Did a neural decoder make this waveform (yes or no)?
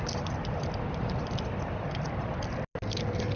no